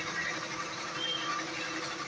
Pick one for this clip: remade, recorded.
recorded